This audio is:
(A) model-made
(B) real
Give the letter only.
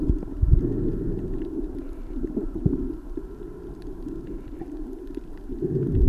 B